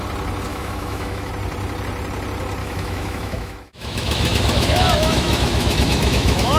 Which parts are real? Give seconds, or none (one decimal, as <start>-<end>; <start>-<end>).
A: 0.0-0.5; 1.3-2.6